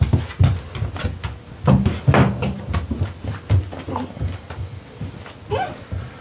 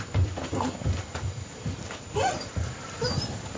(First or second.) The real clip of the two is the first